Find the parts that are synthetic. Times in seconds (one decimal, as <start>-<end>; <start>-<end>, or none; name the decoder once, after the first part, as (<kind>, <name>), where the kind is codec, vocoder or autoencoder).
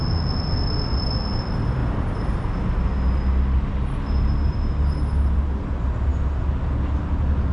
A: 1.8-2.4 (vocoder, BigVGAN v2)